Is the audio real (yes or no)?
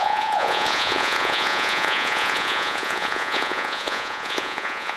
no